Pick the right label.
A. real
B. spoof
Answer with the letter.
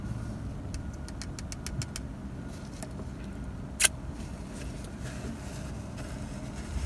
A